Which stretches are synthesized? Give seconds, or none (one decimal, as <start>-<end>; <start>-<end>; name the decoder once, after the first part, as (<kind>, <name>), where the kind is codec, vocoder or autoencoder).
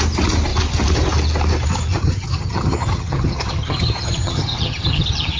1.9-5.4 (vocoder, HiFi-GAN)